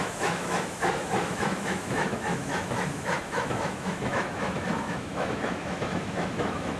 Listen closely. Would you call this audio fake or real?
fake